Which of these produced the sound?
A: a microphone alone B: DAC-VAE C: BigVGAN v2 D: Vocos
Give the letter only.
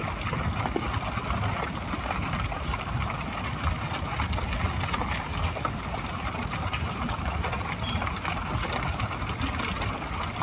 A